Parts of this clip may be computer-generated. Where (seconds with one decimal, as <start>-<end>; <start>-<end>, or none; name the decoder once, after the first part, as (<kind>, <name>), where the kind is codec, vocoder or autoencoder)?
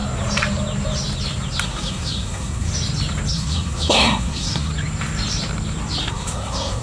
1.6-2.7 (codec, SNAC); 3.3-4.7; 6.1-6.8